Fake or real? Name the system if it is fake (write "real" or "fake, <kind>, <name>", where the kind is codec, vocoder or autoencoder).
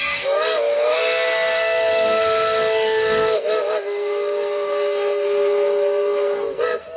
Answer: fake, codec, SNAC